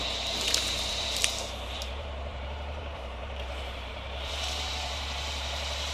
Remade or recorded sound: remade